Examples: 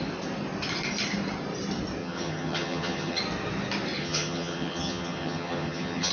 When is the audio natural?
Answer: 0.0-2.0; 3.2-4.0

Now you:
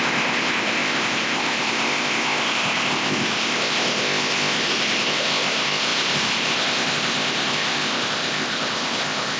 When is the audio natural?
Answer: none

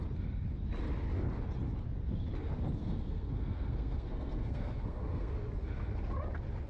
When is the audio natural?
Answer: 0.0-2.8; 5.3-6.7

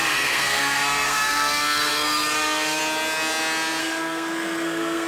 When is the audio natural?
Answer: 2.8-3.8